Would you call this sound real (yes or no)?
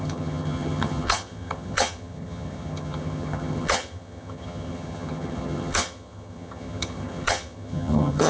no